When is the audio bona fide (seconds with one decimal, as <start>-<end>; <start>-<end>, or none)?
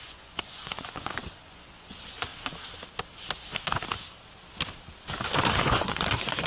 2.3-5.5